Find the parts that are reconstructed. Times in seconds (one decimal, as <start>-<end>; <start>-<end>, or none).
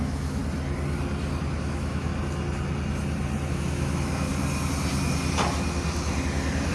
0.0-0.4; 1.6-2.1; 3.5-4.3